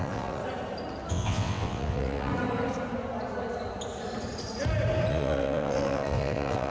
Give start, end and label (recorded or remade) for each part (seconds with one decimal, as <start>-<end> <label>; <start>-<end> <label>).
0.0-0.4 remade; 0.4-1.1 recorded; 1.1-2.3 remade; 2.3-5.1 recorded; 5.1-6.7 remade

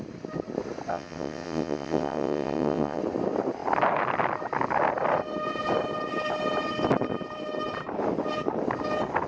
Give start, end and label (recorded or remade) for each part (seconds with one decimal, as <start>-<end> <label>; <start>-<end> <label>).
0.0-0.9 recorded; 0.9-3.0 remade; 3.0-9.3 recorded